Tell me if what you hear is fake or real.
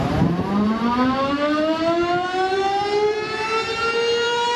fake